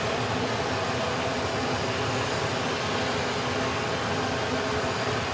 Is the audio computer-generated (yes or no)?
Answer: no